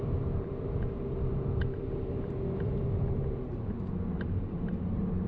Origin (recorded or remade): remade